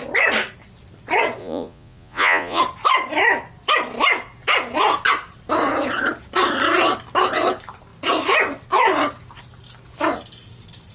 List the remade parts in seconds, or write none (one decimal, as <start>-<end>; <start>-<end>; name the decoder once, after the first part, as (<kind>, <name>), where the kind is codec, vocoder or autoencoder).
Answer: 1.4-2.6 (vocoder, Vocos)